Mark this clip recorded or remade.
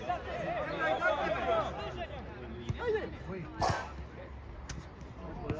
recorded